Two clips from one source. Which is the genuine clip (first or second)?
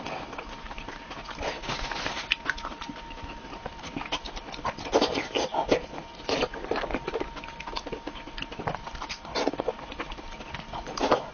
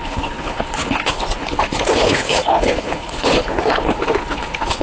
first